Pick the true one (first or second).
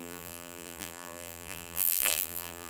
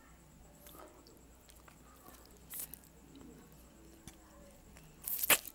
second